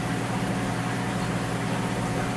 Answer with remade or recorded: recorded